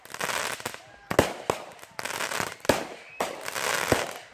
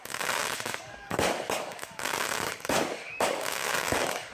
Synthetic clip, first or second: second